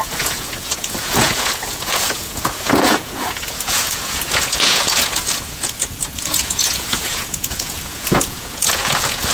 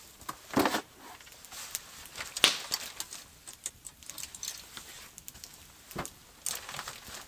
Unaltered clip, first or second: second